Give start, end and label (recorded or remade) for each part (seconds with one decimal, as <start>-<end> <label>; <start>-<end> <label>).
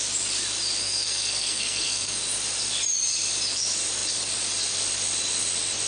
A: 0.0-0.8 recorded; 0.8-2.2 remade; 2.2-5.9 recorded